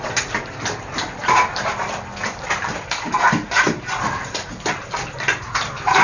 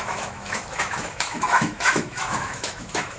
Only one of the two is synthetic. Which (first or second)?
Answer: second